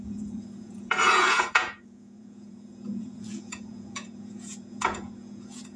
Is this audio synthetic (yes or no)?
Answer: yes